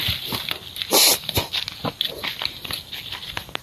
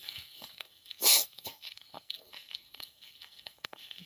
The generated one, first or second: second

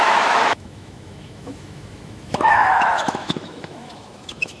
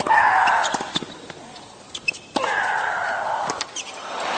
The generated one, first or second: first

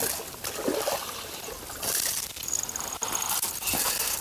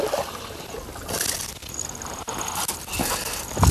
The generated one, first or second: first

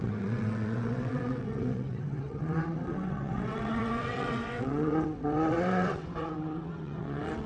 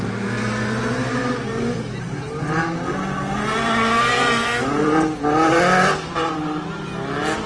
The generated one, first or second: first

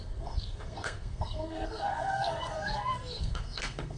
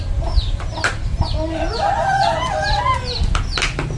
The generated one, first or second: first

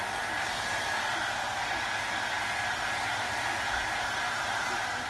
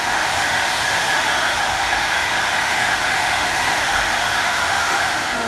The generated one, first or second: second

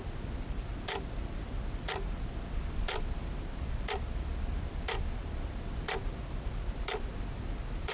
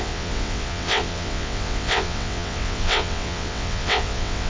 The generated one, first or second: second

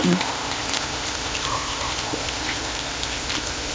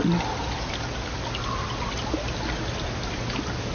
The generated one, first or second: first